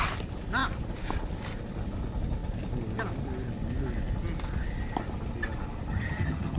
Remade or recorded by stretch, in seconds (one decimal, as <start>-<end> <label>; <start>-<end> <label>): 0.0-5.9 recorded; 5.9-6.6 remade